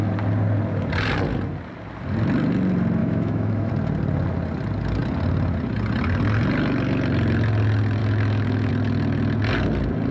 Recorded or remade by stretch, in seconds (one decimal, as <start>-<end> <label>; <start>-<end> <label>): 0.0-3.0 recorded; 3.0-3.7 remade; 3.7-8.0 recorded; 8.0-8.7 remade; 8.7-10.1 recorded